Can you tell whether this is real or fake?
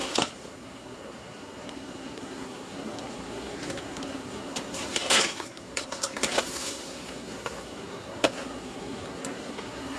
fake